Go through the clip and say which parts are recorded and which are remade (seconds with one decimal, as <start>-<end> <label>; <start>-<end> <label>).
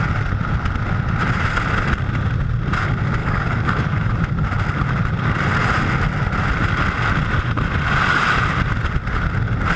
0.0-3.2 recorded; 3.2-4.2 remade; 4.2-9.8 recorded